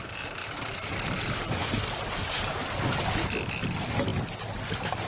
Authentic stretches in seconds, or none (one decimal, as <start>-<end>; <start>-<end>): 0.0-5.1